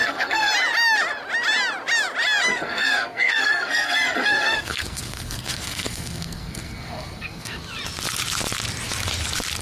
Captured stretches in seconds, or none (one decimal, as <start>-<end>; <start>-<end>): 0.5-2.5; 7.6-9.6